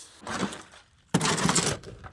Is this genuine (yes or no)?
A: yes